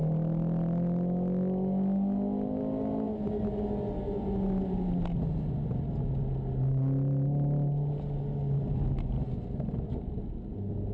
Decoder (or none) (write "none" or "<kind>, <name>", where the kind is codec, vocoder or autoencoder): none